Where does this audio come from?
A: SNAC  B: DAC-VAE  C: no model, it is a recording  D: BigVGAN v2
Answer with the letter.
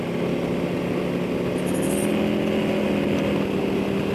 C